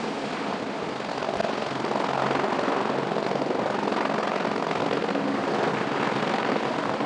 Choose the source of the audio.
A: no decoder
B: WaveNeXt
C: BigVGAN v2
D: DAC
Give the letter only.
A